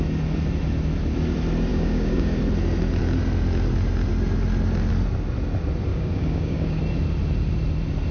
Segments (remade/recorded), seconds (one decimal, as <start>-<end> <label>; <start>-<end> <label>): 0.0-1.7 recorded; 1.7-2.4 remade; 2.4-5.9 recorded; 5.9-6.8 remade; 6.8-8.1 recorded